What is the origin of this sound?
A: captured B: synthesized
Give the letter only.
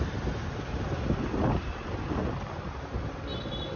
A